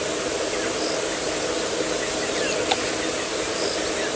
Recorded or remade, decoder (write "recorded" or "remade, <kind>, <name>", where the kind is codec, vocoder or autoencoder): recorded